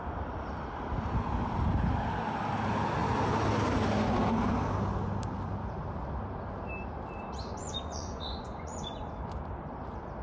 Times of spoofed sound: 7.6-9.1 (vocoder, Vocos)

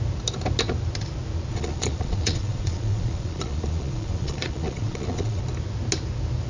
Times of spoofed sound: 1.5-5.4 (vocoder, Vocos)

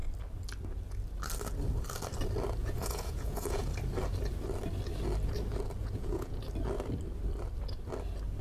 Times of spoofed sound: 2.6-3.7 (vocoder, Vocos); 5.8-6.4

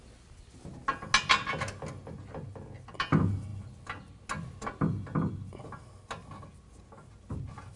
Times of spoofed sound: none

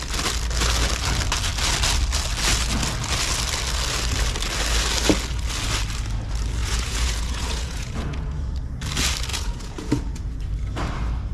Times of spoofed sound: 6.6-8.4 (vocoder, Vocos); 9.3-10.4

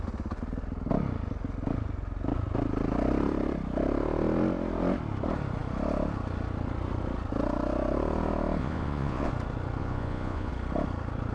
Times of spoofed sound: 8.6-9.3 (vocoder, Vocos); 9.8-10.5

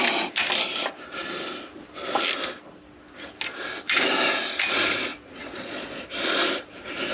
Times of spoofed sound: 5.1-6.0 (vocoder, Vocos)

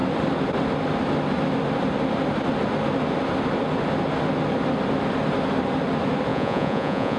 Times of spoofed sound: 6.3-7.2 (vocoder, Vocos)